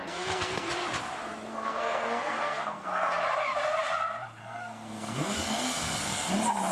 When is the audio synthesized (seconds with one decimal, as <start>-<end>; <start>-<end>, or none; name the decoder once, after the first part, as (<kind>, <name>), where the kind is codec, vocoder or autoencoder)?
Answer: 0.0-0.7 (codec, SNAC); 1.5-3.1; 4.4-6.3